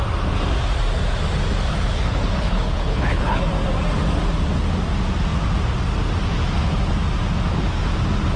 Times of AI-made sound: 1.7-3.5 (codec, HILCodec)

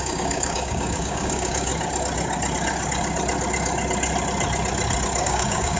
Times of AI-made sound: 0.0-1.7 (codec, DAC); 5.2-5.8

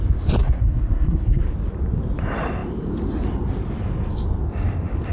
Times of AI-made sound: 0.4-1.4 (codec, SNAC)

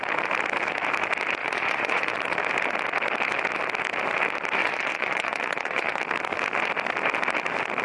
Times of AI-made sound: 1.4-2.1 (vocoder, Vocos); 4.6-6.0

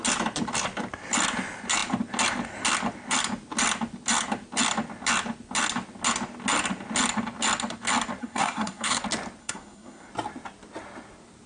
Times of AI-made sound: 8.2-9.0 (codec, SNAC); 9.4-10.1

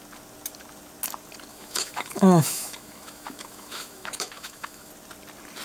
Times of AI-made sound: 1.5-4.9 (autoencoder, DAC-VAE)

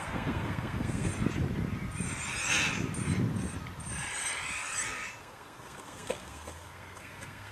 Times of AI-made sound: 0.0-1.1 (codec, SNAC); 5.2-7.5

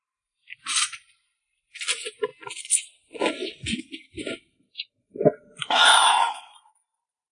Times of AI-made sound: 0.0-2.3 (vocoder, BigVGAN v2); 4.7-7.3